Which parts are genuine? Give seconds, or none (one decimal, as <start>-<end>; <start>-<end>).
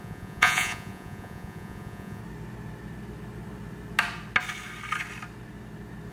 2.2-6.1